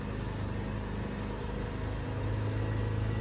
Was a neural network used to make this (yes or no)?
no